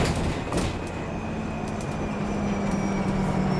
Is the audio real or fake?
real